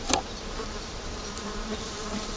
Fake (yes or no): yes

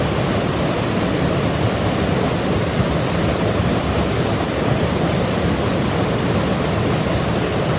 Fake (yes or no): no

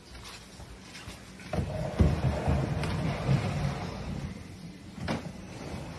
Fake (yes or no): no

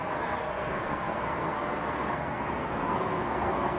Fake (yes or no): yes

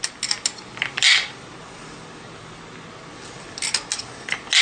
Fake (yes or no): no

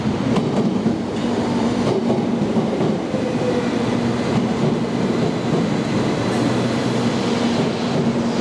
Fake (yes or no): no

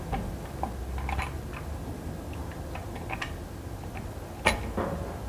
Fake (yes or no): no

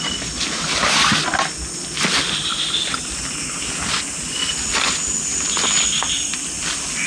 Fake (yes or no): no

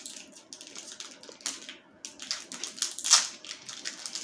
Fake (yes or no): no